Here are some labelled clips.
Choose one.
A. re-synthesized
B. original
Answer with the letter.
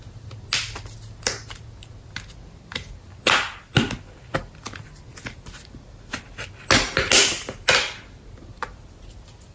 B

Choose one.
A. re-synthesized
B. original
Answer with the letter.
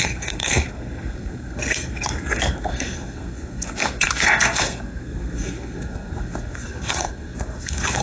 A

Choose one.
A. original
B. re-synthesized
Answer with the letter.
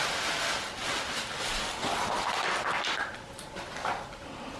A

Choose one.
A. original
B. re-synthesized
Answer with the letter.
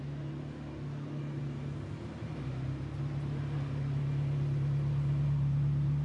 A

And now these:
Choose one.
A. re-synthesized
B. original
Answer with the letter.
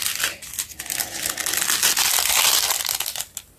B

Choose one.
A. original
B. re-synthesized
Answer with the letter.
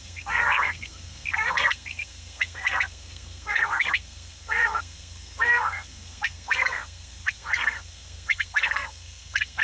B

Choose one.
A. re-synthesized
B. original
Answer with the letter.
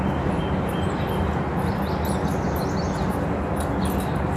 B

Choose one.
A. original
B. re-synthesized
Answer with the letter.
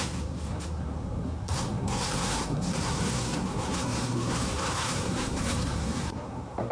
B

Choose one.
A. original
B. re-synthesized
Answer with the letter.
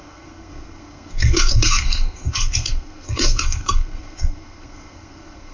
B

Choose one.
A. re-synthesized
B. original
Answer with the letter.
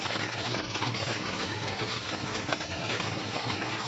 A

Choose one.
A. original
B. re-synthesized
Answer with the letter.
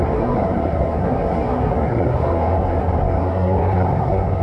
B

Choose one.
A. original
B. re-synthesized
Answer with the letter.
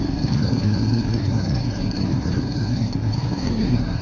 B